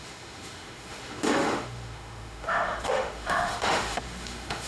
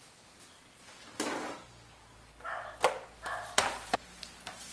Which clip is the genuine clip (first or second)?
second